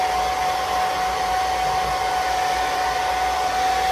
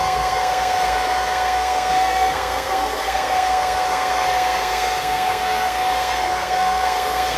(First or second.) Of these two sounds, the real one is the first